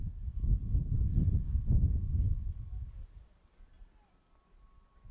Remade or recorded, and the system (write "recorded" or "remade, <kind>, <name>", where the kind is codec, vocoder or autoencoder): recorded